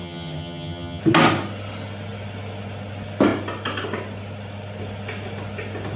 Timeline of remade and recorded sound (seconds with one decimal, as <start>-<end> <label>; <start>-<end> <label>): 0.0-1.0 remade; 1.0-6.0 recorded